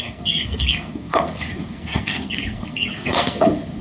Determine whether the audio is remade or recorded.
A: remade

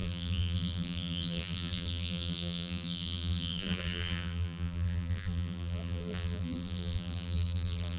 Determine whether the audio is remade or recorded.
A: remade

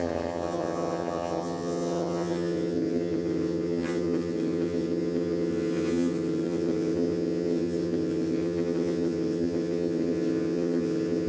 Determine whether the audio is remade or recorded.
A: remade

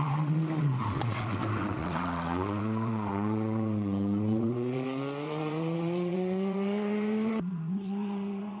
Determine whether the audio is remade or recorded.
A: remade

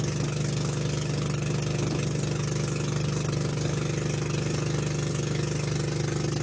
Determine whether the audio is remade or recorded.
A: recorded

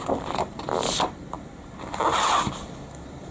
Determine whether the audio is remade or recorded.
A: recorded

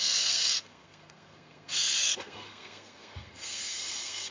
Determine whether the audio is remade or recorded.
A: remade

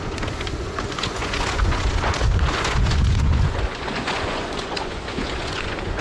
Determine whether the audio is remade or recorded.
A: remade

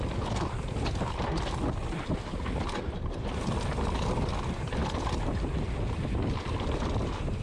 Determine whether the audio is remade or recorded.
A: recorded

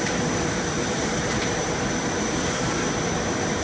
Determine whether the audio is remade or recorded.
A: remade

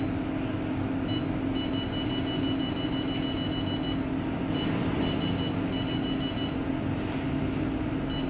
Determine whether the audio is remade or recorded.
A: recorded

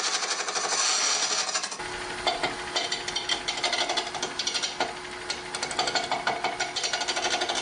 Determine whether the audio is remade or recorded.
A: recorded